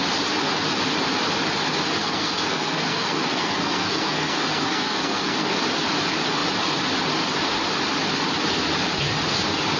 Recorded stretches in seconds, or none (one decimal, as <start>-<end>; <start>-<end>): 0.0-2.0; 5.6-9.8